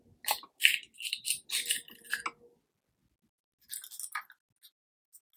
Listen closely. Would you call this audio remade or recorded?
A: recorded